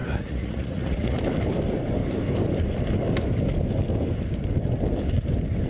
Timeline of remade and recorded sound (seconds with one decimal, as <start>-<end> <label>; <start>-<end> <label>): 0.0-1.2 remade; 1.2-5.7 recorded